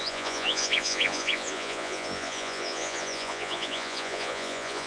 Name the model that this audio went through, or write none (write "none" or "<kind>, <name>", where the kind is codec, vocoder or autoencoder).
vocoder, Vocos